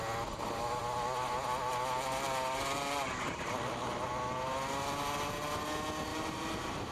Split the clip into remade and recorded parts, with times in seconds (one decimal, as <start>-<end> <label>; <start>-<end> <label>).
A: 0.0-6.1 recorded; 6.1-6.9 remade